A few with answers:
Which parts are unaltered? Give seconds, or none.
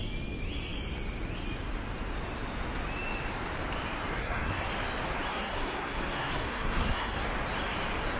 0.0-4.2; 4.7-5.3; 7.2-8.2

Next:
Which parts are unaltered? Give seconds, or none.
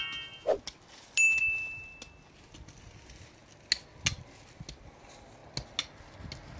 0.0-6.6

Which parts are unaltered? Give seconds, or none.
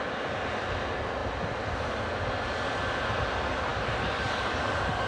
0.0-3.7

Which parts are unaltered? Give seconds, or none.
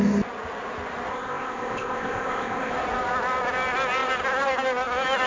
0.0-1.1; 2.7-5.3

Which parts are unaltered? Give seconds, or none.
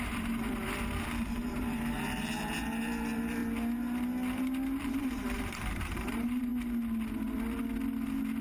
3.4-5.0; 6.5-8.4